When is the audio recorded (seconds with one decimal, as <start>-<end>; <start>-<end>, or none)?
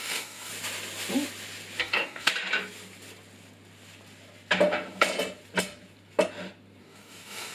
0.5-1.8; 2.3-6.8